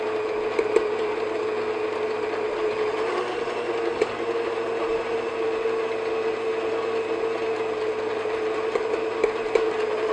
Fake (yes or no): no